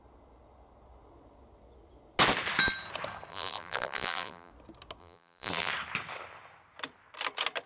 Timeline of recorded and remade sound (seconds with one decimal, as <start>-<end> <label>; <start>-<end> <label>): 0.0-3.3 recorded; 3.3-4.5 remade; 4.5-5.0 recorded; 5.0-5.7 remade; 5.7-7.7 recorded